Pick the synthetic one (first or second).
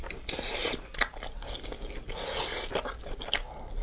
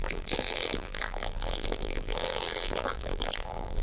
second